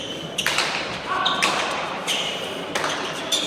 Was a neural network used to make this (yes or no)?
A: no